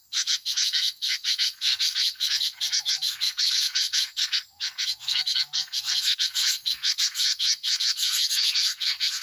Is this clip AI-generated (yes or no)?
yes